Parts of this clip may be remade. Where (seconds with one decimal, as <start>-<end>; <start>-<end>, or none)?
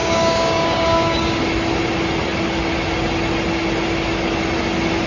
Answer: 0.0-1.4